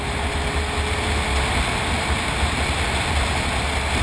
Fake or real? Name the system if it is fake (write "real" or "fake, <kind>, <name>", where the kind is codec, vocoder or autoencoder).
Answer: real